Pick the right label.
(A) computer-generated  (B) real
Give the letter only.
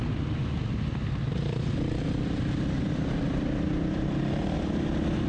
B